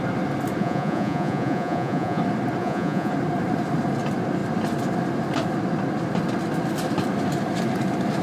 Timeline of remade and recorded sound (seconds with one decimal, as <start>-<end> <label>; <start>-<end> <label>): 0.0-0.6 recorded; 0.6-2.2 remade; 2.2-2.6 recorded; 2.6-3.1 remade; 3.1-8.2 recorded